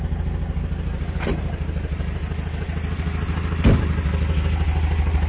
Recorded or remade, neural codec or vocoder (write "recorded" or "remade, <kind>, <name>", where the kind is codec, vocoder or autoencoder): recorded